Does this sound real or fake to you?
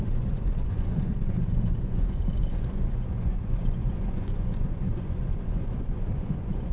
fake